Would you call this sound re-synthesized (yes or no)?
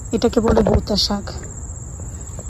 no